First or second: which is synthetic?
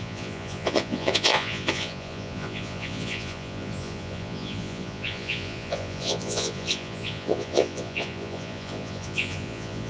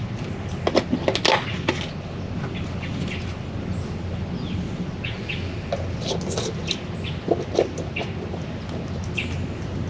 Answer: first